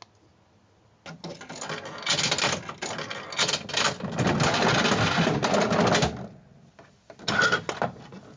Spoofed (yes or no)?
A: no